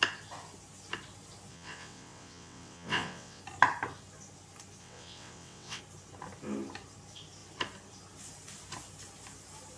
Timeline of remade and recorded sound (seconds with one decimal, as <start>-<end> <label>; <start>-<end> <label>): 0.0-1.5 recorded; 1.5-3.4 remade; 3.4-4.8 recorded; 4.8-5.8 remade; 5.8-9.8 recorded